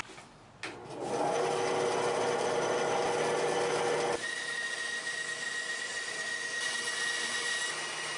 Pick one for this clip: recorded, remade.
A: recorded